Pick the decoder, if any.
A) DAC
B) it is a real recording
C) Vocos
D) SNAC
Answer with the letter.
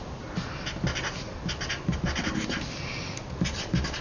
B